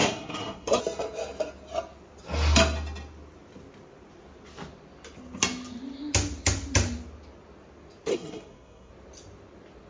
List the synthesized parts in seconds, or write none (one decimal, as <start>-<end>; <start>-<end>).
0.0-0.8; 8.1-8.9